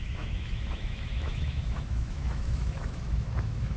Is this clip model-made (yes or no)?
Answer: yes